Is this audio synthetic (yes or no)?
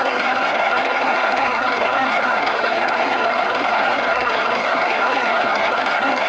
yes